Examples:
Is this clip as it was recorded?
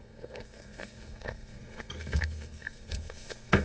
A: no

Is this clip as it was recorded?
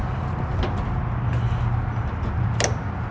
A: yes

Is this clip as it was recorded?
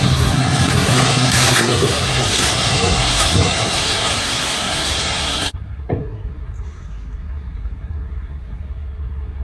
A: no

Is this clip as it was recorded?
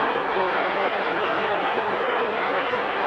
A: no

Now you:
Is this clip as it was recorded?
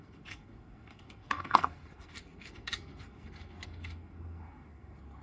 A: no